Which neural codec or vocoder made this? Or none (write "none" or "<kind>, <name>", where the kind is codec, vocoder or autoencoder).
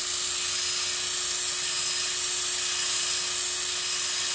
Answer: none